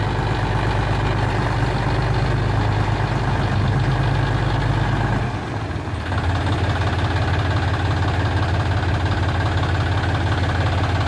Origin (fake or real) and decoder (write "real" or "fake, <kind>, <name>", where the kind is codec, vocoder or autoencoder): real